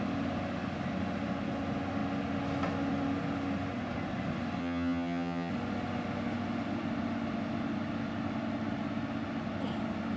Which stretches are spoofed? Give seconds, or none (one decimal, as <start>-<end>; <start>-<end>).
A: 4.6-5.5